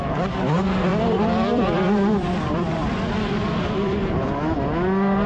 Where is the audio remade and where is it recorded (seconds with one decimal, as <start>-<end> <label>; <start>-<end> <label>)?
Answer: 0.0-0.9 recorded; 0.9-2.3 remade; 2.3-2.8 recorded; 2.8-4.0 remade; 4.0-5.3 recorded